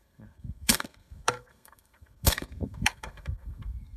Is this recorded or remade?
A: remade